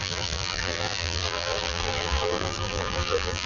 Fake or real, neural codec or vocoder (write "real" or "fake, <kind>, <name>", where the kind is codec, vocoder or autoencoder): fake, vocoder, BigVGAN v2